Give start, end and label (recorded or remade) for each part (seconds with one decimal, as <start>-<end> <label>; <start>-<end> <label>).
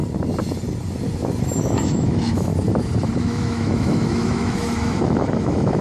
0.0-1.6 recorded; 1.6-2.5 remade; 2.5-3.2 recorded; 3.2-5.8 remade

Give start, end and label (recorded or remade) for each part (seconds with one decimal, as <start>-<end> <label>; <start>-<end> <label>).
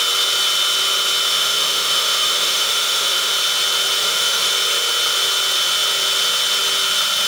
0.0-1.3 recorded; 1.3-3.3 remade; 3.3-4.0 recorded; 4.0-4.5 remade; 4.5-7.3 recorded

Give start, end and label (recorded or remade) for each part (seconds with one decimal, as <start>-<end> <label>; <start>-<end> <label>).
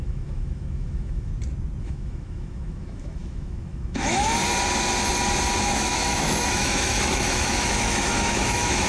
0.0-1.3 remade; 1.3-1.8 recorded; 1.8-4.4 remade; 4.4-5.6 recorded; 5.6-8.9 remade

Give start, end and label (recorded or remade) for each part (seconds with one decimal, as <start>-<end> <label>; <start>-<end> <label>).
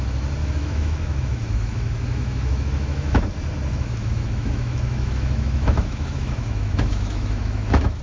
0.0-0.4 recorded; 0.4-3.2 remade; 3.2-3.7 recorded; 3.7-8.0 remade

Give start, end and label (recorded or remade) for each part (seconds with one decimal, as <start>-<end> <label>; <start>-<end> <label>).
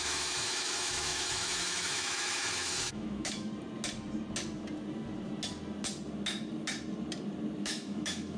0.0-3.5 remade; 3.5-7.6 recorded; 7.6-8.4 remade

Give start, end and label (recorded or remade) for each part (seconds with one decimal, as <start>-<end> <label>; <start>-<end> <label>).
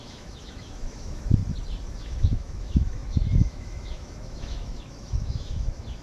0.0-1.4 remade; 1.4-1.9 recorded; 1.9-6.0 remade